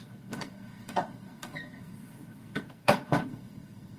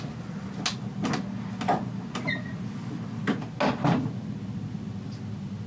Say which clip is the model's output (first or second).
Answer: first